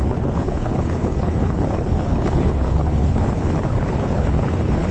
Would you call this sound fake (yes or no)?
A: yes